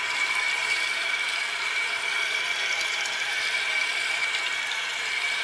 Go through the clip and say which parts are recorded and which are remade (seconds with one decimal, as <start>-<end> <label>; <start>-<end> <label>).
0.0-5.4 remade